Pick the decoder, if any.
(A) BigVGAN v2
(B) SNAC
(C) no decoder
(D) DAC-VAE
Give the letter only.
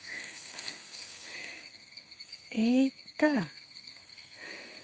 B